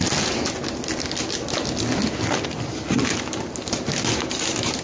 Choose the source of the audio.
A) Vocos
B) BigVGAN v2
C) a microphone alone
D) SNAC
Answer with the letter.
C